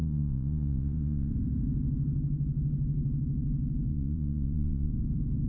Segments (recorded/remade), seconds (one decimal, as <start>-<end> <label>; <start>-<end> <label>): 0.0-1.3 remade; 1.3-3.9 recorded; 3.9-4.9 remade; 4.9-5.5 recorded